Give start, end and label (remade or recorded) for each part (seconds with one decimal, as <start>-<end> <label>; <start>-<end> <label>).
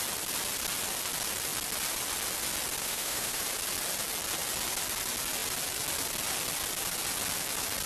0.0-2.8 recorded; 2.8-3.4 remade; 3.4-7.9 recorded